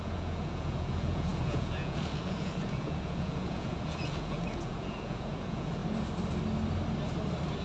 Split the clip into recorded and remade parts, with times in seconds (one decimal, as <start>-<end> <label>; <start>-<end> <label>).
0.0-5.8 remade; 5.8-7.6 recorded

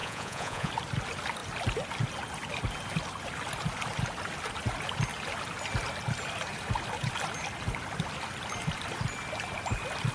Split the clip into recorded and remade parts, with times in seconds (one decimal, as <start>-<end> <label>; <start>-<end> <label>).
0.0-0.7 remade; 0.7-10.1 recorded

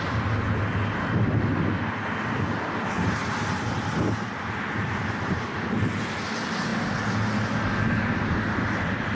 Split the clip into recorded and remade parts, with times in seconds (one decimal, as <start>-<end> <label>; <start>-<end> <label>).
0.0-9.1 recorded

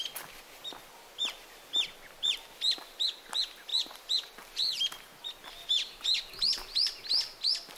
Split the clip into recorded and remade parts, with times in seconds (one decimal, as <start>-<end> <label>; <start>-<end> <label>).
0.0-3.7 recorded; 3.7-4.3 remade; 4.3-7.8 recorded